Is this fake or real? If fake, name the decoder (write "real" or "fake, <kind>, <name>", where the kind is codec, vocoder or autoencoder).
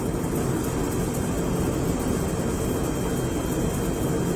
real